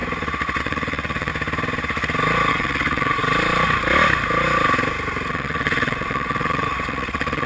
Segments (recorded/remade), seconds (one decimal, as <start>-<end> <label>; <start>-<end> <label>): 0.0-0.6 recorded; 0.6-1.3 remade; 1.3-2.5 recorded; 2.5-3.2 remade; 3.2-5.3 recorded; 5.3-7.5 remade